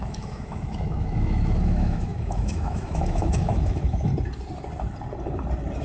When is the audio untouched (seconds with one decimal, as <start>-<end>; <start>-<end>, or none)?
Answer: 4.1-5.8